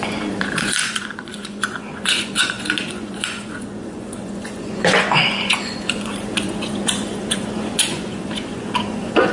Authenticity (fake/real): fake